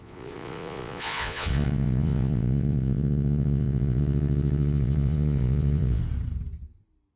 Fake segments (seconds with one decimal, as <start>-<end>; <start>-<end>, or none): 0.0-6.0